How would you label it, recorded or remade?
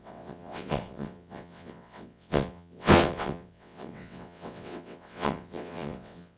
remade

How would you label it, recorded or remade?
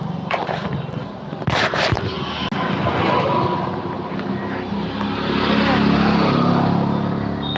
recorded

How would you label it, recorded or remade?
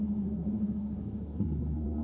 remade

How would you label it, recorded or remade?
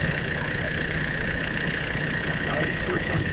remade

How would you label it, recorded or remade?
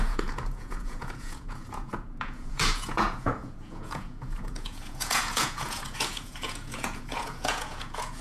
remade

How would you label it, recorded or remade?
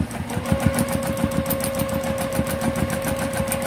recorded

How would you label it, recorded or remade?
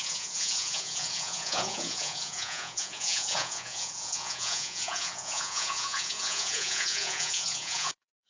remade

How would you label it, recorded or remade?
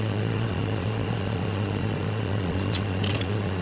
remade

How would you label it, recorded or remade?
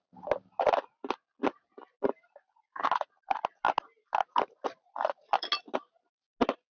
recorded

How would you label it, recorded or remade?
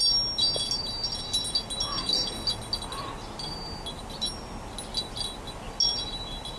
recorded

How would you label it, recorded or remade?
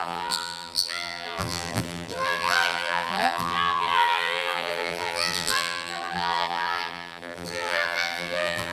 remade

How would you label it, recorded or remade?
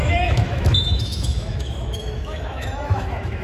remade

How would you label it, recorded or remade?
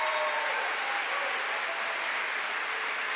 recorded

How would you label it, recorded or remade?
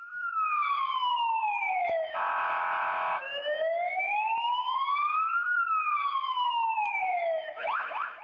remade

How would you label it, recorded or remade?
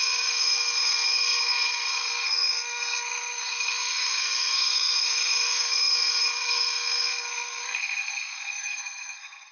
remade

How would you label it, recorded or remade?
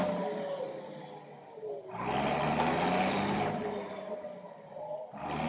recorded